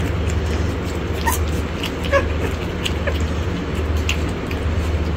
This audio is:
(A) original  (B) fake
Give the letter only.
A